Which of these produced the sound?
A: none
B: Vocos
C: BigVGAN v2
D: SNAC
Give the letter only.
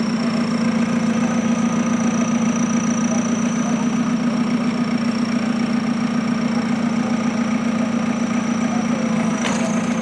A